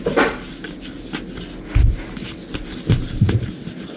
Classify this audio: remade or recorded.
recorded